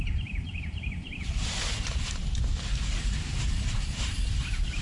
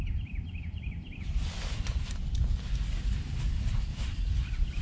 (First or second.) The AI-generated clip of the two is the first